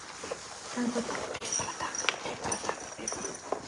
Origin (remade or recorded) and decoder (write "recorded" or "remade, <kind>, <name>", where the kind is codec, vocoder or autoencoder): recorded